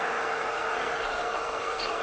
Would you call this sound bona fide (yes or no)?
no